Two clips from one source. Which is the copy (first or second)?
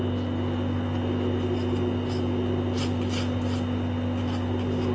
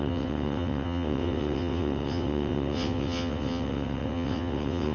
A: second